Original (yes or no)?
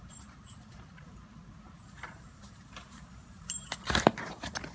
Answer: no